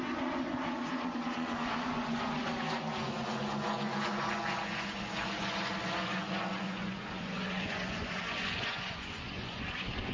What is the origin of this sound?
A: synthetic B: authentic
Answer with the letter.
A